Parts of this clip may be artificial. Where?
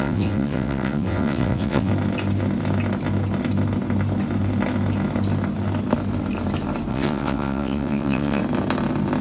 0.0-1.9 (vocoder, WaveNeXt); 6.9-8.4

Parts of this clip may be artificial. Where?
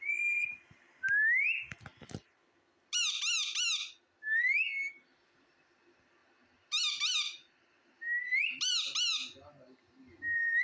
none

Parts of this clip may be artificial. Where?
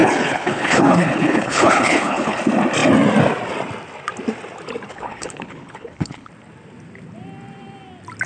0.0-2.4 (codec, HILCodec); 4.9-6.3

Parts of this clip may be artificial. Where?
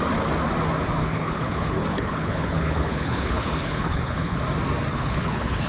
1.0-4.4 (codec, HILCodec); 4.9-5.7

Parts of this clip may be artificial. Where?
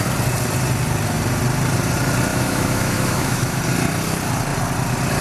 2.3-3.6 (autoencoder, DAC-VAE)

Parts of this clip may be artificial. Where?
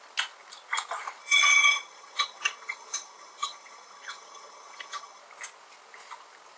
1.2-5.2 (vocoder, HiFi-GAN)